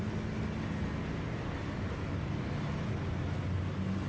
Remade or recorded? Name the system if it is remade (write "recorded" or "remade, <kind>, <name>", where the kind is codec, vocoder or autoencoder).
recorded